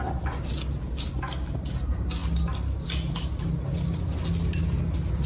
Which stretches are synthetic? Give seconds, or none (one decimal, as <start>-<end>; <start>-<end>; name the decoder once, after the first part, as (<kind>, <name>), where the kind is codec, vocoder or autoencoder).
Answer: none

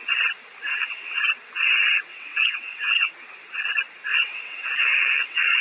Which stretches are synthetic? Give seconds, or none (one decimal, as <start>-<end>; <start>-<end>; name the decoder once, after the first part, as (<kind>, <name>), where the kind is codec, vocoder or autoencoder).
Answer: 0.7-1.2 (vocoder, WaveNeXt); 2.1-3.1; 4.1-5.6

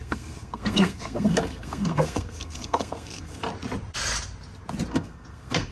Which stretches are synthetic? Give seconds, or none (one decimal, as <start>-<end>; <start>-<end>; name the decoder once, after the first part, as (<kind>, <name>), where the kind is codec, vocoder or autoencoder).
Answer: 0.0-3.4 (codec, SNAC); 4.9-5.7

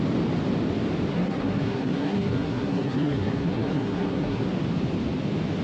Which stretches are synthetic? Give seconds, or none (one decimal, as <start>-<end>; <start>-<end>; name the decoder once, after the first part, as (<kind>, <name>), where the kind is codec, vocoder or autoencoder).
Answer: 1.1-4.5 (codec, SNAC)

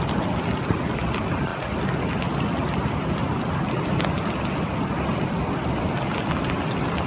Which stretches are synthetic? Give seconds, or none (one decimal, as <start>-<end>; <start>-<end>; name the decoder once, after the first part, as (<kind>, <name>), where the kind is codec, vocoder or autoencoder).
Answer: none